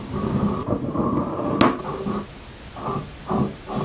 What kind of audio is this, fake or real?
real